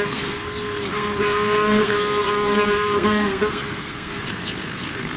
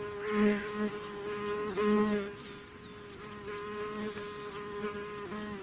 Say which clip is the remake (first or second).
first